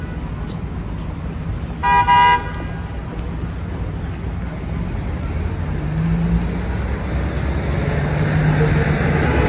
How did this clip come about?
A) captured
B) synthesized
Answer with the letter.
A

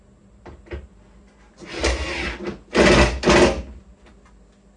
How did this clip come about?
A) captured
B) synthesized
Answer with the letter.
A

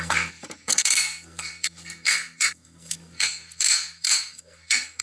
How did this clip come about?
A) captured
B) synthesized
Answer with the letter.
B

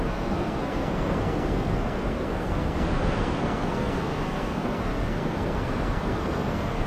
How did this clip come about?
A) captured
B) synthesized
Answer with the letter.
B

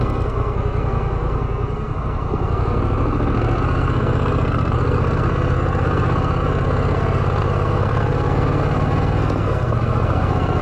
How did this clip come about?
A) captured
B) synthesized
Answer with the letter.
B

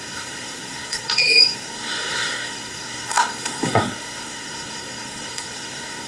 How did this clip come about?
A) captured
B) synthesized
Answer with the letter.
B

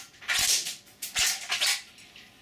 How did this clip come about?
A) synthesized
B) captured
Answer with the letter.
B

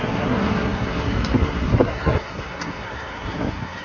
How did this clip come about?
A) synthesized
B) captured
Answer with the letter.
A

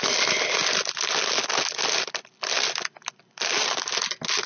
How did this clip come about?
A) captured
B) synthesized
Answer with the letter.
A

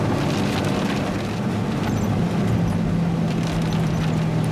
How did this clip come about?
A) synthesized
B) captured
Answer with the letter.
B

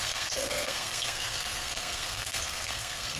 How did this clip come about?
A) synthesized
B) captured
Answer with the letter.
A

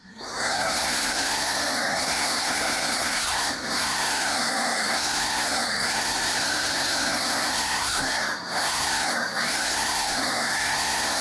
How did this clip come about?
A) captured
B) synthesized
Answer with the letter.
B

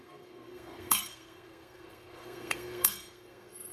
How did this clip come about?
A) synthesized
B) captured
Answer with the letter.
A